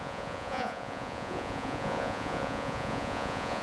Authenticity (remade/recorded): remade